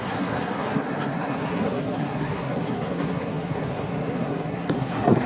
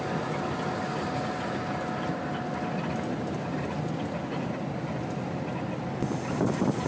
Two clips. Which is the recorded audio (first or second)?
second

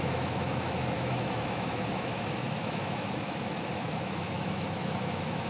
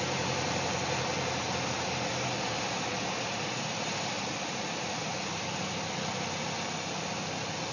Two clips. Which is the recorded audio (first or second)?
second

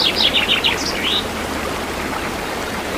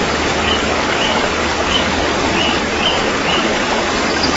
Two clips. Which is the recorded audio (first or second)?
first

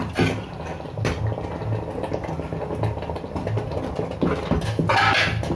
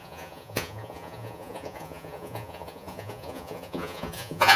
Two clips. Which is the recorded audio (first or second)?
first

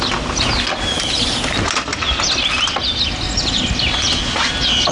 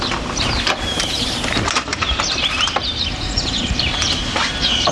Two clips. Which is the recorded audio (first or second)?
first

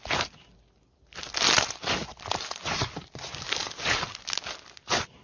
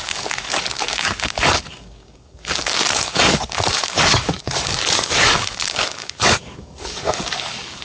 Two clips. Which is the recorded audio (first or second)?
first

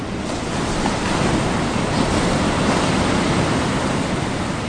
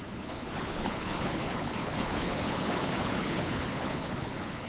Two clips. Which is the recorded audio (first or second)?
first